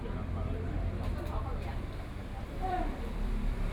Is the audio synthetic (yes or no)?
yes